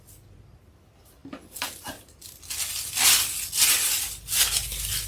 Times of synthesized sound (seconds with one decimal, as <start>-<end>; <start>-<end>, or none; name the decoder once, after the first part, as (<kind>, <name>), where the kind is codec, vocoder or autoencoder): none